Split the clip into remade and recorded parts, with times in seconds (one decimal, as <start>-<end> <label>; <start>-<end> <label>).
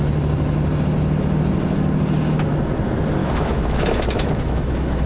0.0-3.2 recorded; 3.2-5.1 remade